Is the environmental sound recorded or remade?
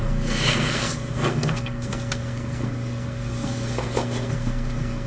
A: remade